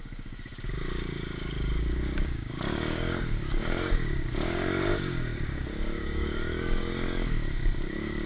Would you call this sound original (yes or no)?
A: no